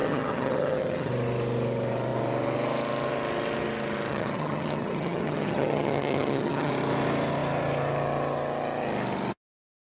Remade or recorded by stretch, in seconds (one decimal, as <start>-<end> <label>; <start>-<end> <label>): 0.0-1.1 remade; 1.1-4.1 recorded; 4.1-6.7 remade; 6.7-9.9 recorded